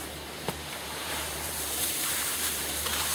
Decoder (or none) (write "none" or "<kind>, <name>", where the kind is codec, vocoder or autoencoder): vocoder, BigVGAN v2